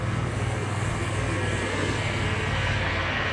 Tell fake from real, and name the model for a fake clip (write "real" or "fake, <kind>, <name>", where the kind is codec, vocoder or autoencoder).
fake, codec, SNAC